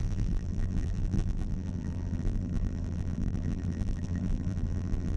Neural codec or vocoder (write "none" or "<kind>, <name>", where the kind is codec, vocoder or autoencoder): vocoder, BigVGAN v2